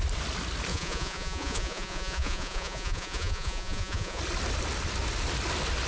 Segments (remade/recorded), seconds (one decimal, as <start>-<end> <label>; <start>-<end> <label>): 0.0-0.7 recorded; 0.7-4.2 remade; 4.2-5.9 recorded